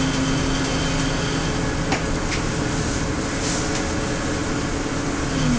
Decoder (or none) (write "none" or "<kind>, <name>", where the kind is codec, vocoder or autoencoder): none